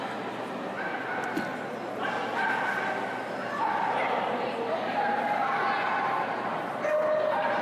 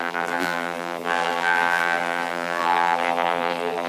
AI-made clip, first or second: second